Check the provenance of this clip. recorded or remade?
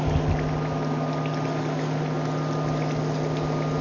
recorded